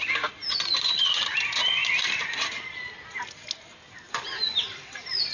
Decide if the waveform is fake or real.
real